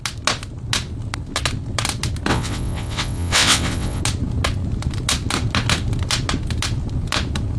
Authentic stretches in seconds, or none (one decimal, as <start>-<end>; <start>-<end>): 0.0-2.3; 4.0-7.6